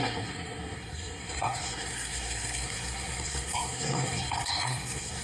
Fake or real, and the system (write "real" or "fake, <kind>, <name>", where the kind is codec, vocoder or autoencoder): fake, codec, SNAC